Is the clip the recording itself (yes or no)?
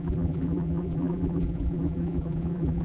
no